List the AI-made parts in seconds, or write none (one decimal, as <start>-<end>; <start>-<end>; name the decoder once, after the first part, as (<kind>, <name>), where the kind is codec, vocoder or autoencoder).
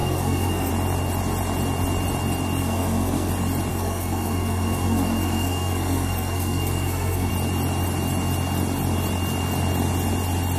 0.0-0.7 (codec, SNAC); 2.6-3.3; 3.7-7.3